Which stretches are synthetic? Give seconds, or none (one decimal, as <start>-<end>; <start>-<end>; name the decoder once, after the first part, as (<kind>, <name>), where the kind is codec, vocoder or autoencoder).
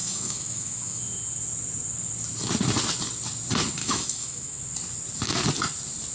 0.0-1.0 (autoencoder, DAC-VAE); 3.8-4.6